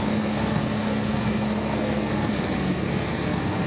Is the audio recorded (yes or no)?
no